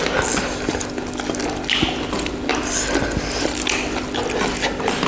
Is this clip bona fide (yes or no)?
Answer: yes